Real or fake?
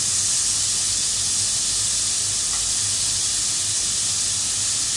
real